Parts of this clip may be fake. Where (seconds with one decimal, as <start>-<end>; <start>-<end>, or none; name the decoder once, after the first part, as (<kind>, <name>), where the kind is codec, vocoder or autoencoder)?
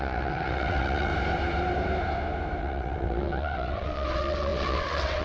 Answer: 0.0-1.1 (vocoder, WaveNeXt); 2.6-5.2